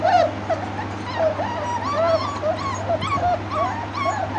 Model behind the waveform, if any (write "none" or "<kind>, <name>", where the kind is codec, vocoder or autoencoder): none